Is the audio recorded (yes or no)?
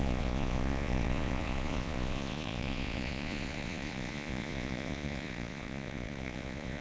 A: no